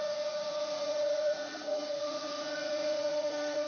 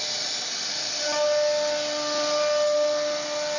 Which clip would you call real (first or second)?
second